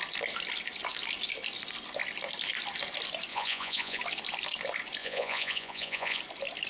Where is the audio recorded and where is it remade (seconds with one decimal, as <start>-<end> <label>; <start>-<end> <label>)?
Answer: 0.0-3.3 recorded; 3.3-4.0 remade; 4.0-5.0 recorded; 5.0-6.2 remade; 6.2-6.7 recorded